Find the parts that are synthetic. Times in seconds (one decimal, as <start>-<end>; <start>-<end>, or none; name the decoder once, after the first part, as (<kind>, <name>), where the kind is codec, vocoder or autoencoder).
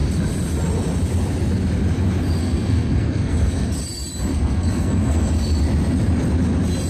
2.4-3.7 (codec, SNAC); 4.3-5.3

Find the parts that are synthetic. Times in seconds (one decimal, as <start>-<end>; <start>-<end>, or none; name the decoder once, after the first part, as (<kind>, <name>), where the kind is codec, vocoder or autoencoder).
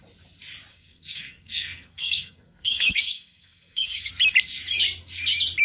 0.7-4.1 (codec, SNAC)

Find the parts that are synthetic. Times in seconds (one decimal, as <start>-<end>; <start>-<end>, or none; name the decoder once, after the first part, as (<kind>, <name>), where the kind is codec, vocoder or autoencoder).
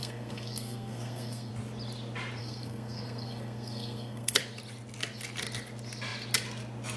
0.0-1.5 (codec, SNAC); 2.4-4.4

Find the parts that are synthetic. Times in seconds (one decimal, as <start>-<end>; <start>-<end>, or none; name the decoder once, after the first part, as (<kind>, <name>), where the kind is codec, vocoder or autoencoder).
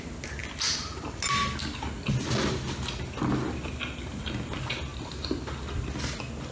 none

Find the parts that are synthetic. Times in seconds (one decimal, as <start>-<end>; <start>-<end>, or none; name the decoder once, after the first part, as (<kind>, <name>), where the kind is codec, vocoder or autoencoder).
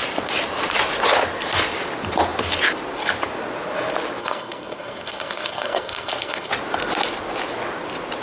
4.2-6.5 (codec, SNAC)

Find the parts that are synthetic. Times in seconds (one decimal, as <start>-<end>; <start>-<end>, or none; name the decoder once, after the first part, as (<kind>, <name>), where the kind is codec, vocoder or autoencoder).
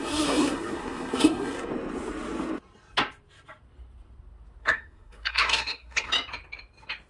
0.0-1.7 (codec, SNAC); 4.6-6.1